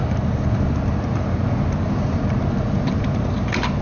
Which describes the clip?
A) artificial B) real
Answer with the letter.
B